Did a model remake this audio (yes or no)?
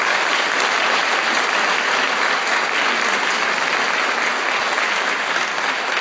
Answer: no